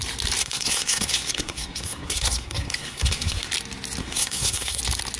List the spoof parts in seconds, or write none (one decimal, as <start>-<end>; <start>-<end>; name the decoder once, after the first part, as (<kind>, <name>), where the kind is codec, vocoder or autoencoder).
0.4-3.5 (codec, SNAC); 4.0-4.8